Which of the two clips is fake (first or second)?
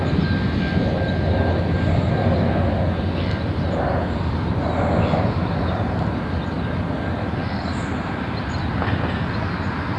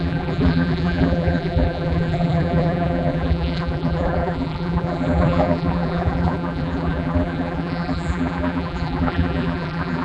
second